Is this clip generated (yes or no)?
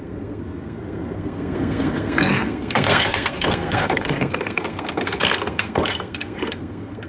yes